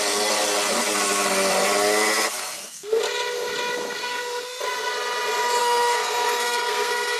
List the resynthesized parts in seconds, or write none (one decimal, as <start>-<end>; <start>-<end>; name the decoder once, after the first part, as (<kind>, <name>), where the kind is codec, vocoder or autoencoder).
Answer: 2.4-3.0 (codec, SNAC); 4.0-4.6; 5.6-7.2